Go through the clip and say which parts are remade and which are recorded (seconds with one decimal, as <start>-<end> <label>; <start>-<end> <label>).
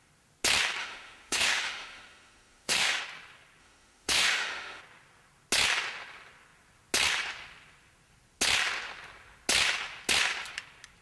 0.0-0.8 recorded; 0.8-3.0 remade; 3.0-3.6 recorded; 3.6-4.8 remade; 4.8-11.0 recorded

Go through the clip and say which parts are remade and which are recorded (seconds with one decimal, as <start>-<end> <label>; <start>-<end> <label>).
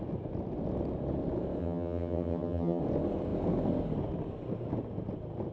0.0-1.6 recorded; 1.6-2.8 remade; 2.8-5.5 recorded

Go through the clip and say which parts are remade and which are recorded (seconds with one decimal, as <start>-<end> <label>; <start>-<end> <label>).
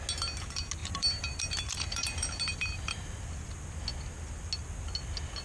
0.0-0.8 recorded; 0.8-3.2 remade; 3.2-5.4 recorded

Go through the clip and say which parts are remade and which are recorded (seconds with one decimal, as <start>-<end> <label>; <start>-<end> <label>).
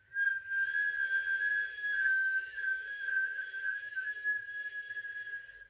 0.0-1.5 recorded; 1.5-4.9 remade; 4.9-5.7 recorded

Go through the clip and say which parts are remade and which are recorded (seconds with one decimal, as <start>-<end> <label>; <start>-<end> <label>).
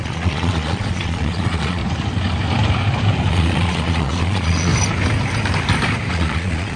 0.0-1.8 remade; 1.8-3.3 recorded; 3.3-4.7 remade; 4.7-6.1 recorded; 6.1-6.8 remade